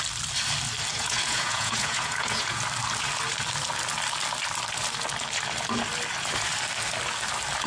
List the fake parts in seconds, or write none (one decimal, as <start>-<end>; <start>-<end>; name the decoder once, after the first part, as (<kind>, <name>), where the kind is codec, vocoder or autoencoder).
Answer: 0.9-2.6 (vocoder, Vocos)